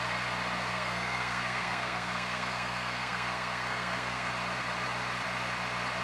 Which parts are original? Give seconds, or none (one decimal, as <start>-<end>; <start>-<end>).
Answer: 0.0-0.7; 4.3-6.0